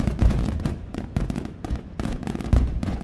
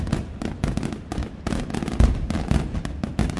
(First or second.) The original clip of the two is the second